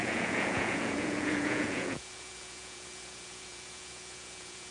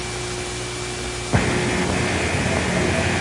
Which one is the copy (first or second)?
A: first